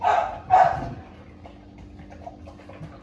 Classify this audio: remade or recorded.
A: recorded